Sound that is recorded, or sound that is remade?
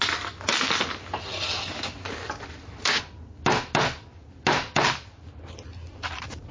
recorded